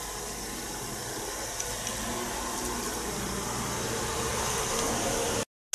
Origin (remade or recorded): recorded